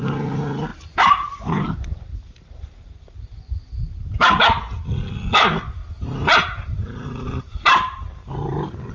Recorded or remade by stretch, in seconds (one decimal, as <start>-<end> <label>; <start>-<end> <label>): 0.0-0.7 recorded; 0.7-3.4 remade; 3.4-5.8 recorded; 5.8-8.9 remade